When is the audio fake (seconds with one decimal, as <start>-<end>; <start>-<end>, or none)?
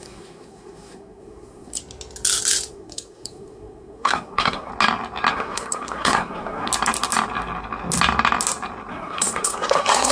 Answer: 0.0-1.8; 2.7-4.7; 5.3-6.7; 8.9-10.1